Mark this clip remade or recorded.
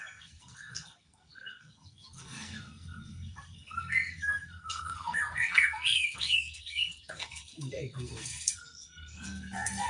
remade